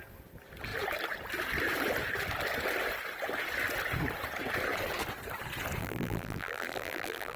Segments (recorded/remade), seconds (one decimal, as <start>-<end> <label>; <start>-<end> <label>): 0.0-5.8 recorded; 5.8-7.4 remade